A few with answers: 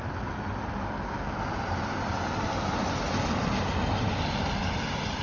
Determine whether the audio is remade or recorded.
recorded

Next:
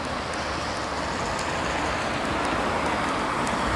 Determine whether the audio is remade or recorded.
recorded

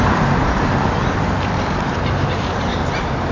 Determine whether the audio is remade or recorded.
remade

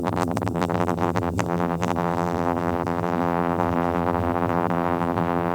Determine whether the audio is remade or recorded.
remade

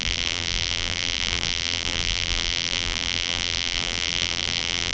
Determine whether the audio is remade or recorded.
remade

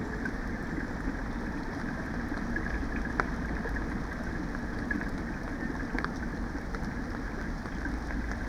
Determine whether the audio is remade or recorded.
recorded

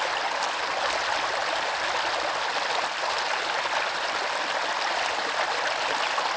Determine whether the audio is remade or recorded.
recorded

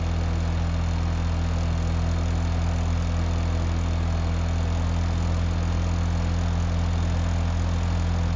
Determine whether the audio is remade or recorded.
recorded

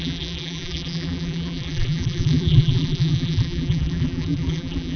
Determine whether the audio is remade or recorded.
remade